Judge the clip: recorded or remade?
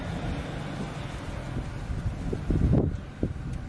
recorded